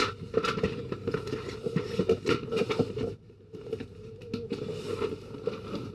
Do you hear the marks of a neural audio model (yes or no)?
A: no